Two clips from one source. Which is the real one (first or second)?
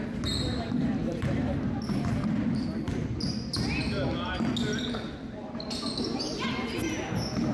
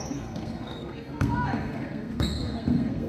first